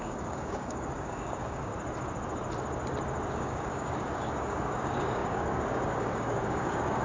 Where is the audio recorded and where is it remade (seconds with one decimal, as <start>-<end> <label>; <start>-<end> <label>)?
0.0-1.7 remade; 1.7-3.3 recorded; 3.3-7.0 remade